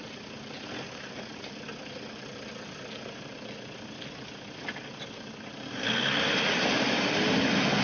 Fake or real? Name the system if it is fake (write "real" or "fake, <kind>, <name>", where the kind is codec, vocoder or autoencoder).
real